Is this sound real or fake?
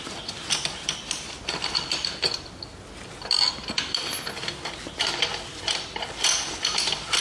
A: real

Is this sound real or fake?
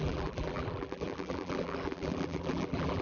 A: fake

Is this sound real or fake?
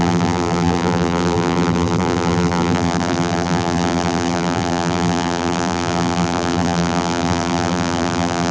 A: fake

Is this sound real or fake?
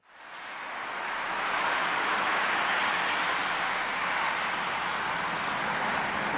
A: real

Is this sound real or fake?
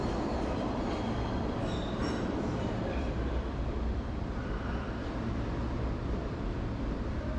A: fake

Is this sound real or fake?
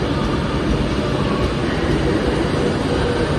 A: real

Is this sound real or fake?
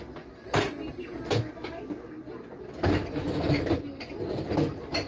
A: real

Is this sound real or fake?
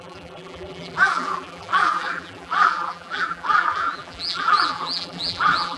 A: fake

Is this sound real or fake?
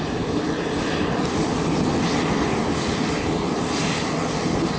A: fake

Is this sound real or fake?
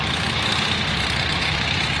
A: real